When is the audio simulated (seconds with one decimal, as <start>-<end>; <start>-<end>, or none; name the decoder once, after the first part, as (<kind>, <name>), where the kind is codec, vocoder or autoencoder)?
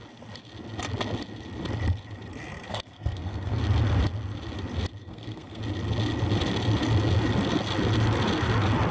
2.7-3.6 (codec, SNAC); 5.0-5.6